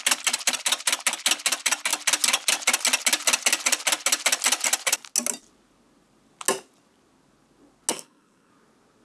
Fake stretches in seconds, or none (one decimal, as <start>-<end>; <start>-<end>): 7.9-8.5

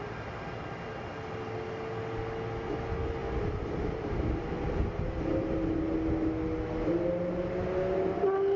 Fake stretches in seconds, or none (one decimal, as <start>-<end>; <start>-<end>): none